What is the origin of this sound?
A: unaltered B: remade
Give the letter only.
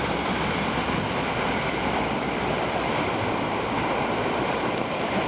B